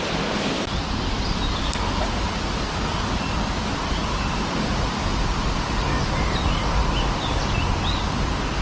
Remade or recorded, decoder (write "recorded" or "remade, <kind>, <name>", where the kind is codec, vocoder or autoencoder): recorded